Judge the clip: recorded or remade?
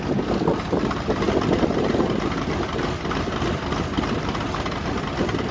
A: recorded